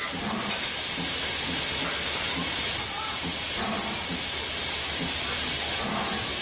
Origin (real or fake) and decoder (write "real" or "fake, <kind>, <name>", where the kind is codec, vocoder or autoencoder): real